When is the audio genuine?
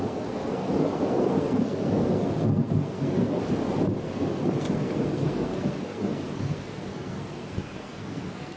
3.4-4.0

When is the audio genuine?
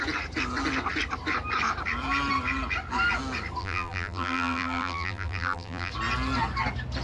0.0-3.6; 5.9-7.0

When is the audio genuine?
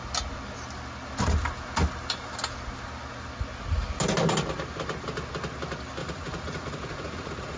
0.0-6.0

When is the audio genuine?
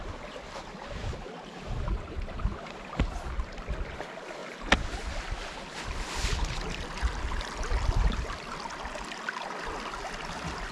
0.0-1.0; 2.4-10.7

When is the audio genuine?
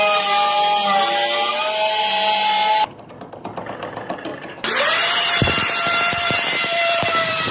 0.0-4.3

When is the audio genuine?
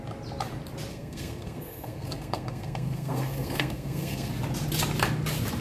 0.0-0.9; 4.3-5.6